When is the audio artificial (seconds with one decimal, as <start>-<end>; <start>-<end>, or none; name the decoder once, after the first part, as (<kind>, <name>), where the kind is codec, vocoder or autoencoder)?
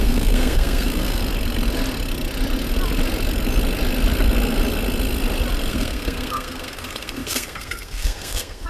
0.0-1.2 (codec, SNAC); 5.7-8.7